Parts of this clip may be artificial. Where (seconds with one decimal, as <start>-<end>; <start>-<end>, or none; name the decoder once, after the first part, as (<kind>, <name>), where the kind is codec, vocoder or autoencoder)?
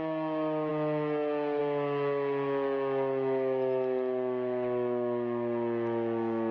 none